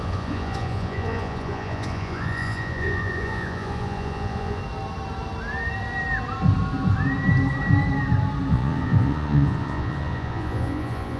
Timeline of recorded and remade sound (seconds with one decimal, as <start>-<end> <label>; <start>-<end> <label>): 0.0-4.6 remade; 4.6-8.5 recorded; 8.5-11.2 remade